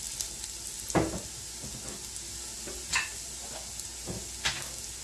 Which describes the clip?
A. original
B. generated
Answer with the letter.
A